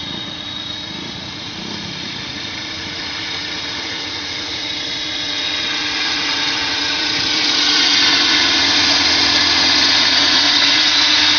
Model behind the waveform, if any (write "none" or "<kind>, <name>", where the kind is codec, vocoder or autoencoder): vocoder, Vocos